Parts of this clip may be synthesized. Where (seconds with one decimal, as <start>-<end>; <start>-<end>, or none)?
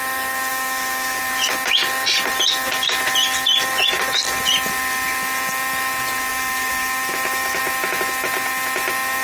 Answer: 0.5-1.2; 6.3-7.6